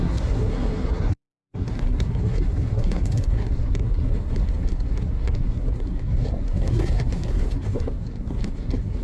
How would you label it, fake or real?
fake